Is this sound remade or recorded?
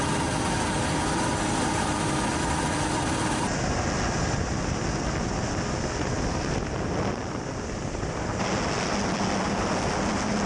recorded